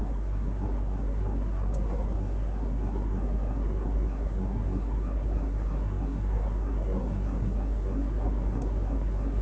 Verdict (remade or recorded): remade